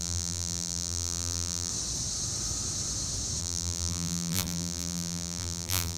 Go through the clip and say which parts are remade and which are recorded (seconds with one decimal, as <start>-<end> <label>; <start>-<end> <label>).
0.0-1.7 remade; 1.7-3.4 recorded; 3.4-6.0 remade